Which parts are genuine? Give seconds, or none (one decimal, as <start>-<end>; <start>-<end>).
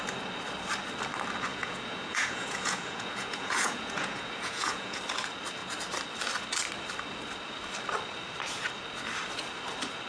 0.0-1.5; 5.0-10.1